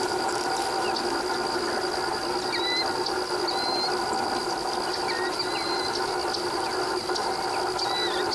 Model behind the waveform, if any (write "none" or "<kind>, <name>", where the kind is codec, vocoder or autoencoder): none